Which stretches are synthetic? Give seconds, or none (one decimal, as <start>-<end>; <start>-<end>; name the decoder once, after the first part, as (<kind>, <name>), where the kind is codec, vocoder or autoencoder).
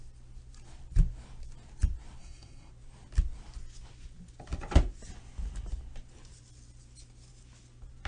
2.2-2.7 (codec, SNAC)